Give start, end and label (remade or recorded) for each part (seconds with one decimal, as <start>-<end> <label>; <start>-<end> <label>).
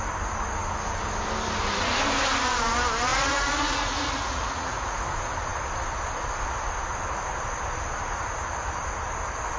0.0-3.1 recorded; 3.1-5.0 remade; 5.0-9.6 recorded